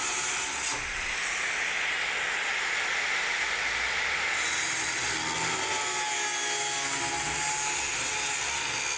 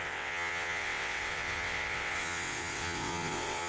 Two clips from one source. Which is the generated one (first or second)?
second